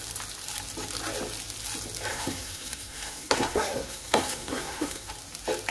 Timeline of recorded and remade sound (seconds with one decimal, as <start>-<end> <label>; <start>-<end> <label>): 0.0-2.1 recorded; 2.1-5.1 remade; 5.1-5.7 recorded